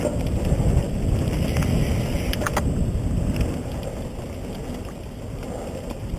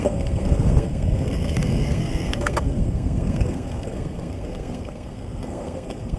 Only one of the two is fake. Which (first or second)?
second